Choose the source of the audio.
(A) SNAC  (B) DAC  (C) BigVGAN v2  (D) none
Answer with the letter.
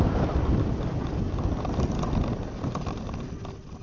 D